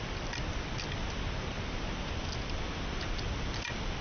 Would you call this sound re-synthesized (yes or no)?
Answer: no